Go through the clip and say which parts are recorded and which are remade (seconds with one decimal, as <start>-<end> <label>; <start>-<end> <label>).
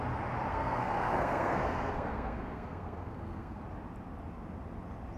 0.0-0.5 recorded; 0.5-3.6 remade; 3.6-5.2 recorded